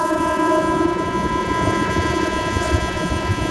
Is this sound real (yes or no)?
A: no